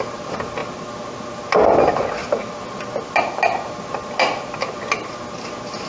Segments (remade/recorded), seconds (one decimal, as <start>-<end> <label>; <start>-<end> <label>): 0.0-5.9 recorded

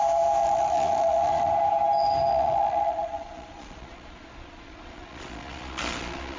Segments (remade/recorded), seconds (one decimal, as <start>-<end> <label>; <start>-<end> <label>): 0.0-0.4 recorded; 0.4-1.5 remade; 1.5-2.3 recorded; 2.3-6.4 remade

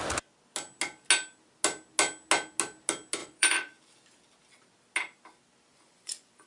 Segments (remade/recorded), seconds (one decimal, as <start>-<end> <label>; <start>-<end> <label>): 0.0-3.2 recorded; 3.2-3.8 remade; 3.8-5.7 recorded; 5.7-6.5 remade